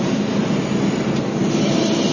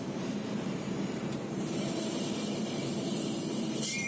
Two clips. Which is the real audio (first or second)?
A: first